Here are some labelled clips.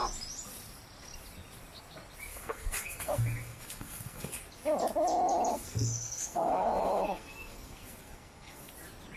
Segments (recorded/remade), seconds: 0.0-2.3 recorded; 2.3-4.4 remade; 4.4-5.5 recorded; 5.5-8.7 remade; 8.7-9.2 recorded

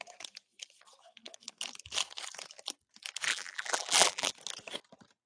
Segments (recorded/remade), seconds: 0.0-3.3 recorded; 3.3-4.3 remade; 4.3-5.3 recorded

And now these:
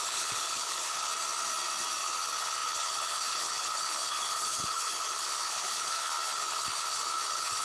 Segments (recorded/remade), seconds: 0.0-1.1 remade; 1.1-2.0 recorded; 2.0-7.6 remade

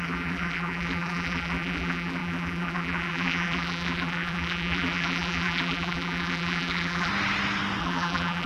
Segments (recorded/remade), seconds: 0.0-7.1 remade; 7.1-7.8 recorded; 7.8-8.5 remade